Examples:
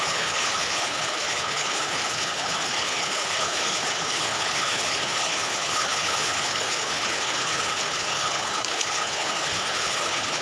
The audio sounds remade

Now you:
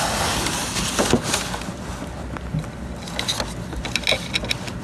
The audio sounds recorded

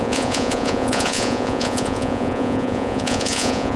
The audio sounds remade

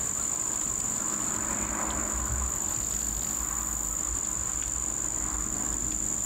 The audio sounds recorded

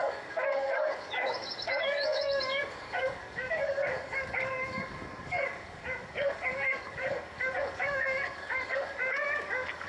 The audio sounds remade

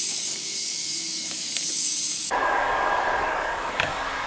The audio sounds remade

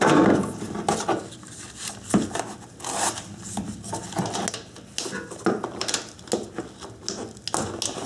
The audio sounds recorded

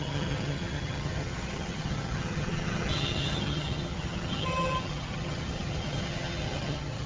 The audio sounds remade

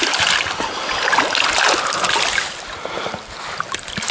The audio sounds recorded